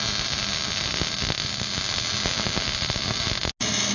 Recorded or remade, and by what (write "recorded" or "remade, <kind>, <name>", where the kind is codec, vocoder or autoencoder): recorded